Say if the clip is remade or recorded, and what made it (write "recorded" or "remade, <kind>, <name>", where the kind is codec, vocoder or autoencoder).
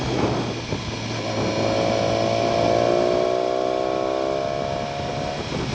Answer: recorded